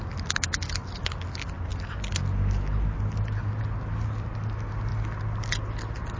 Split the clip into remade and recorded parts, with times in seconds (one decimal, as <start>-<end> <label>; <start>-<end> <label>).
0.0-6.2 recorded